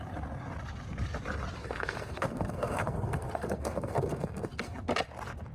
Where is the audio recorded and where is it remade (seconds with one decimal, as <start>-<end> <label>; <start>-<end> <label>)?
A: 0.0-1.6 recorded; 1.6-4.9 remade; 4.9-5.5 recorded